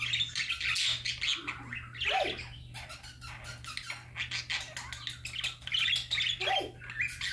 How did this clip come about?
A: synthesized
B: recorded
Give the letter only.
B